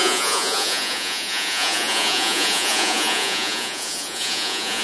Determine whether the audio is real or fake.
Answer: fake